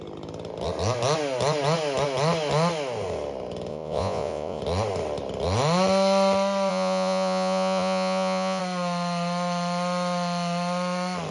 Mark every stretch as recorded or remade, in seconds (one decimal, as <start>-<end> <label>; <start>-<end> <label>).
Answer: 0.0-3.7 recorded; 3.7-4.6 remade; 4.6-6.7 recorded; 6.7-8.6 remade; 8.6-11.3 recorded